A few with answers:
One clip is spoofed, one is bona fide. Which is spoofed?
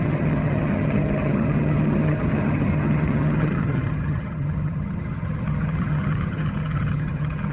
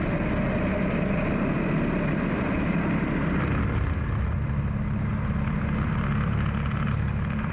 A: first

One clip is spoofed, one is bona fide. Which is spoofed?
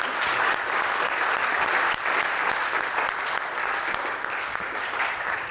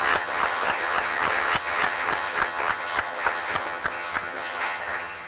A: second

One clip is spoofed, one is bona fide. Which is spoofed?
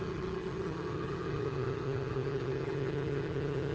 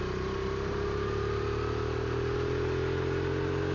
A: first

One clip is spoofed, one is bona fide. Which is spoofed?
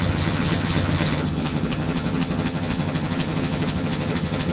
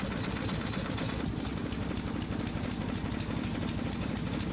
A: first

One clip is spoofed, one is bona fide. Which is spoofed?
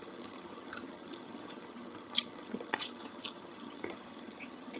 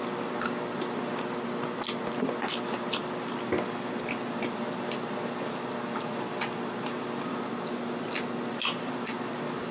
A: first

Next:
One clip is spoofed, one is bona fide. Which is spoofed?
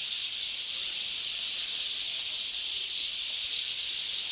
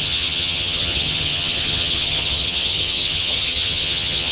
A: second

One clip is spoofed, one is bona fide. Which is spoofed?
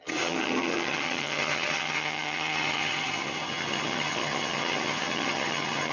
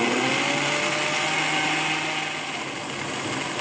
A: first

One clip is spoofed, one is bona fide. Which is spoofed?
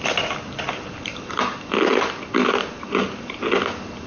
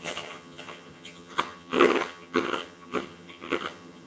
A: second